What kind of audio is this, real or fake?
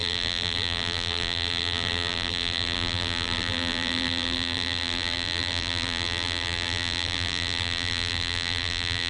fake